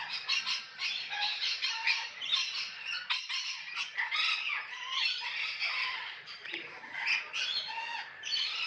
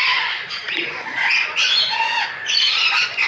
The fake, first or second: second